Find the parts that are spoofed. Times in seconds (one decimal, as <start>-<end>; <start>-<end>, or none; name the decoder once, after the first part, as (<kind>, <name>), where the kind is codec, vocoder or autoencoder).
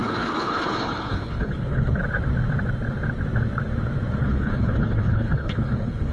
0.0-2.0 (codec, HILCodec); 4.2-6.1